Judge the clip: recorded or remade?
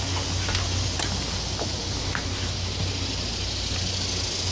recorded